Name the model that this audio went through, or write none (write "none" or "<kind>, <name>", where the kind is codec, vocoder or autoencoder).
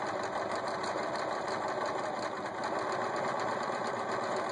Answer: none